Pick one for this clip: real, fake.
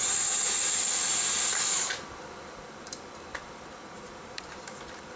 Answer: fake